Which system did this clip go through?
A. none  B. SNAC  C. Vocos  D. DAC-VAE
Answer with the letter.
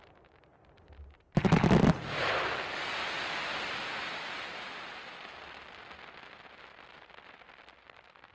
A